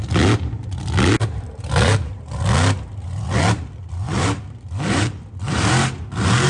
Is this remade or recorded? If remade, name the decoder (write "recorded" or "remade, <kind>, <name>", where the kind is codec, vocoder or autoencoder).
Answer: recorded